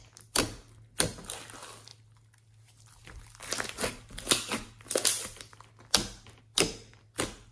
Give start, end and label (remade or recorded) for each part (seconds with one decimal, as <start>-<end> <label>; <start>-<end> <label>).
0.0-7.5 recorded